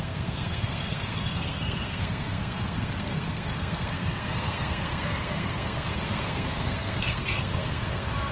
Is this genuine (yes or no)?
no